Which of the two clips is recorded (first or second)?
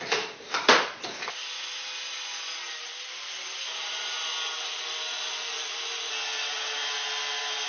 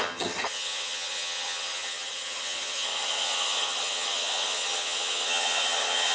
first